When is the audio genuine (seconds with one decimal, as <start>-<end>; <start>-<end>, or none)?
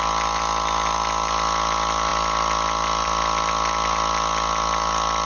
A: 0.0-5.3